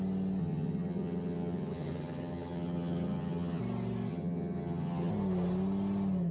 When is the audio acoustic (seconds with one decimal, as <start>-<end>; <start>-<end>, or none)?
0.0-0.4; 3.6-4.1; 5.1-6.3